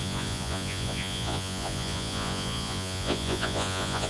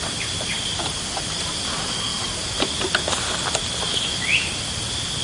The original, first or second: second